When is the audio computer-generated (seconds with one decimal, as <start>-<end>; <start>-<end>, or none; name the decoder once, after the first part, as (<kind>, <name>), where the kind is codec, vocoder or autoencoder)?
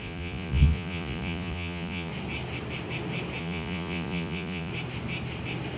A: 0.0-2.1 (vocoder, Vocos); 3.4-4.7